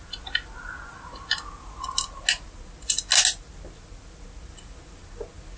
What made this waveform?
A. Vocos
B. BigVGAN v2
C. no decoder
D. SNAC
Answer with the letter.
C